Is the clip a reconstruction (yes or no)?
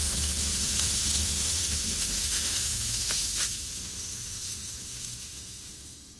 yes